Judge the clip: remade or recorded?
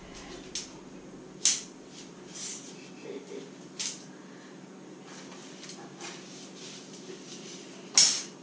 recorded